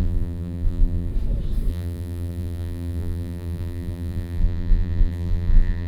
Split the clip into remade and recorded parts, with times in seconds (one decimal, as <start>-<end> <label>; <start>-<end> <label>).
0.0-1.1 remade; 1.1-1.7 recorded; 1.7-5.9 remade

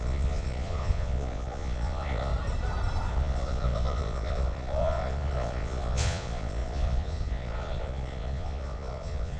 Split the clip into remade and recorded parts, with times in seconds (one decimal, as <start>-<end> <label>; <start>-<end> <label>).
0.0-2.3 remade; 2.3-3.1 recorded; 3.1-9.4 remade

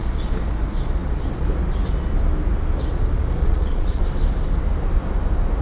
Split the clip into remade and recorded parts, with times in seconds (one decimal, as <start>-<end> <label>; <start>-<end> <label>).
0.0-3.4 recorded; 3.4-4.0 remade; 4.0-5.6 recorded

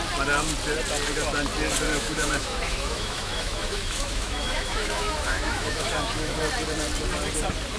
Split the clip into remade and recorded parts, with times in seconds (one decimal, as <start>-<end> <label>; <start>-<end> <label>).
0.0-1.9 recorded; 1.9-6.4 remade; 6.4-7.8 recorded